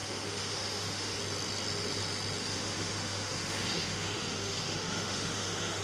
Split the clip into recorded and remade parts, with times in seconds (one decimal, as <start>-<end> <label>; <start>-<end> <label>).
0.0-1.2 remade; 1.2-2.4 recorded; 2.4-5.8 remade